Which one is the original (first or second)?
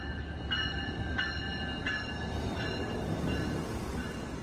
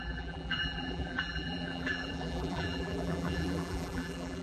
first